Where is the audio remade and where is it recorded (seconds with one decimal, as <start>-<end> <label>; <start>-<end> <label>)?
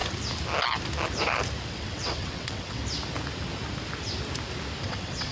0.0-1.7 recorded; 1.7-2.8 remade; 2.8-4.8 recorded; 4.8-5.3 remade